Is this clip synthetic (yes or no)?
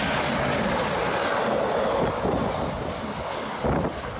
no